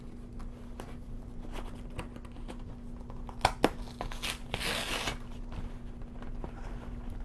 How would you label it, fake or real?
real